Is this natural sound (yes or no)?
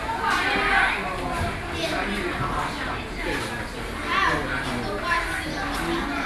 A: yes